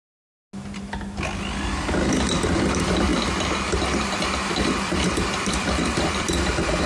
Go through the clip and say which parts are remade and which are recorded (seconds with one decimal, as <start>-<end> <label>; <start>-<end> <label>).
0.0-2.5 recorded; 2.5-3.1 remade; 3.1-4.0 recorded; 4.0-6.9 remade

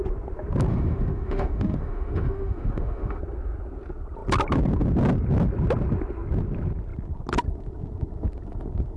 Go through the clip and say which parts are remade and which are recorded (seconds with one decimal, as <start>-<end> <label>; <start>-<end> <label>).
0.0-0.7 recorded; 0.7-3.2 remade; 3.2-9.0 recorded

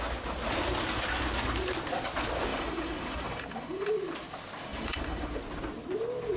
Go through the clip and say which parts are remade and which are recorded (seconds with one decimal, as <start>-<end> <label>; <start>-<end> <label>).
0.0-2.5 recorded; 2.5-3.9 remade; 3.9-4.7 recorded; 4.7-5.4 remade; 5.4-6.4 recorded

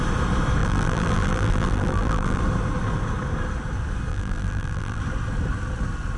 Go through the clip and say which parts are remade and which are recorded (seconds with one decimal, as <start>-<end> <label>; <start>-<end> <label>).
0.0-0.6 recorded; 0.6-2.4 remade; 2.4-4.1 recorded; 4.1-5.0 remade; 5.0-6.2 recorded

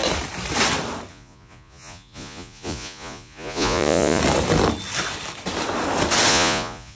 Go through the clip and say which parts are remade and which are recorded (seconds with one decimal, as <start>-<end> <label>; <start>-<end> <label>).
0.0-1.1 recorded; 1.1-4.2 remade; 4.2-6.3 recorded; 6.3-6.9 remade

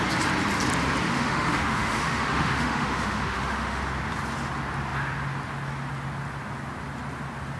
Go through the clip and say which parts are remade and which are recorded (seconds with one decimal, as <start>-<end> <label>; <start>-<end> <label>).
0.0-1.1 recorded; 1.1-3.8 remade; 3.8-7.6 recorded

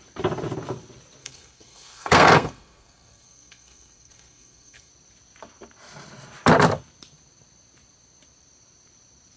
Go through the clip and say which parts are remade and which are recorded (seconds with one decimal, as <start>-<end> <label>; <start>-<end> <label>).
0.0-1.2 recorded; 1.2-4.9 remade; 4.9-9.4 recorded

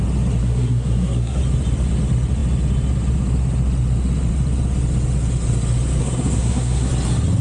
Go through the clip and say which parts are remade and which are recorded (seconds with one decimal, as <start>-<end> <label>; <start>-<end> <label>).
0.0-0.4 recorded; 0.4-1.4 remade; 1.4-6.0 recorded; 6.0-6.9 remade; 6.9-7.4 recorded